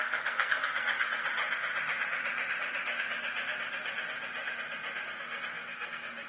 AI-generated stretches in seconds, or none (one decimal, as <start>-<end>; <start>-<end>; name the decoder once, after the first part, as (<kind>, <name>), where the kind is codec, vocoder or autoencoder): 0.0-1.4 (codec, SNAC); 5.2-6.3